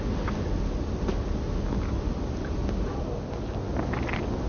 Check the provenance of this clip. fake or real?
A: real